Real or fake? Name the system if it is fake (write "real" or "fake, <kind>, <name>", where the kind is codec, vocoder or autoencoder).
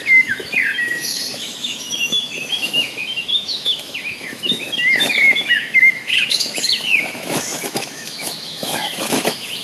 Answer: fake, autoencoder, DAC-VAE